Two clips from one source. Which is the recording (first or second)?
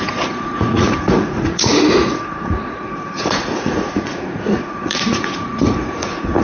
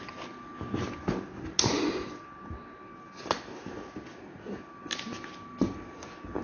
second